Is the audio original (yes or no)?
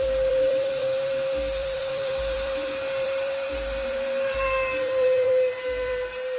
no